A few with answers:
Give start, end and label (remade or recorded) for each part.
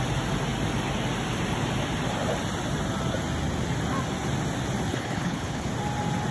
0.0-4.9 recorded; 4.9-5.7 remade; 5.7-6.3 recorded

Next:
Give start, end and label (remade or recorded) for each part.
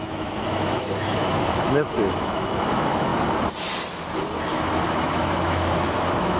0.0-3.1 remade; 3.1-4.9 recorded; 4.9-6.4 remade